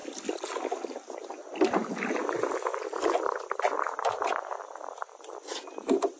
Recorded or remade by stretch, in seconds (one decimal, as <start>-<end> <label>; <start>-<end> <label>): 0.0-6.2 recorded